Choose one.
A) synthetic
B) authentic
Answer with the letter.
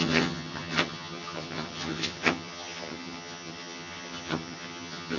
A